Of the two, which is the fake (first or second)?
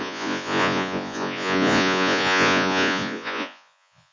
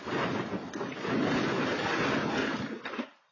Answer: first